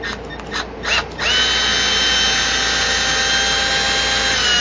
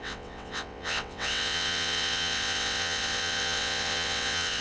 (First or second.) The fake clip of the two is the second